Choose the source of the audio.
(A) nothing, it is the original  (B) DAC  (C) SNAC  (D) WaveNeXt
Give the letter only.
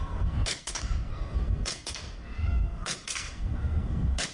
C